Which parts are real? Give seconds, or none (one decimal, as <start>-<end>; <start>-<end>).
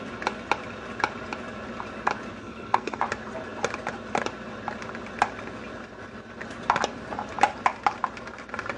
0.0-2.4; 3.0-8.8